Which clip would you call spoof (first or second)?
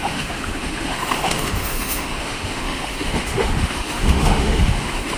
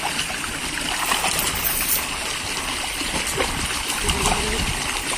first